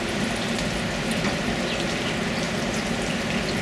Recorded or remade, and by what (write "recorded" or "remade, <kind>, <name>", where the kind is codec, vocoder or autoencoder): recorded